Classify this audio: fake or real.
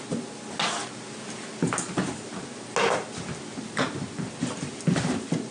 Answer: real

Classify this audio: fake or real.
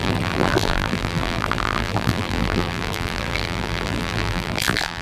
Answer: fake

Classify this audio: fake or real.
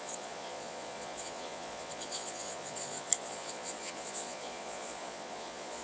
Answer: fake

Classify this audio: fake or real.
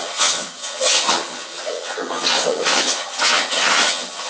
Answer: fake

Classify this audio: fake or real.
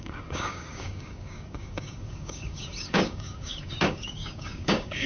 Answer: fake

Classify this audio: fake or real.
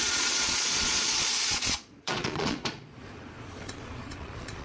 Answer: fake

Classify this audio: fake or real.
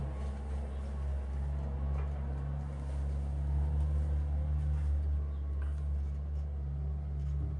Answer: real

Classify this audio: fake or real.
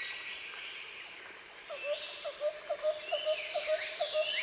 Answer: real